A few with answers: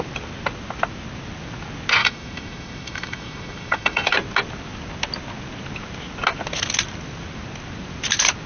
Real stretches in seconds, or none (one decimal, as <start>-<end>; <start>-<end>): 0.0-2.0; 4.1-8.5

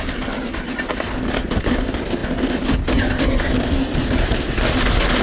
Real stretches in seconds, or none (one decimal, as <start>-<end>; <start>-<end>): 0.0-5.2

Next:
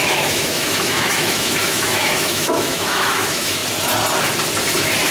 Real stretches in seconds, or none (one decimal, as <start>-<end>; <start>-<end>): 3.6-5.1